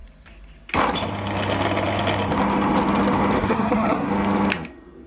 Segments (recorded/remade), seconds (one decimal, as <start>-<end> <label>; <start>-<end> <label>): 0.0-3.4 recorded; 3.4-4.1 remade; 4.1-5.1 recorded